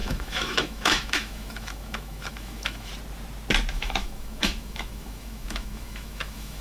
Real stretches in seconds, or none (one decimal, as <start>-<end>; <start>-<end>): 2.9-3.7